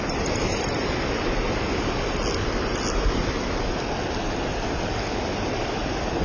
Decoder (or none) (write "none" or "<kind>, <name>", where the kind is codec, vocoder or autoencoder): none